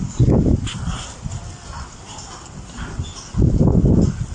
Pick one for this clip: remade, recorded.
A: recorded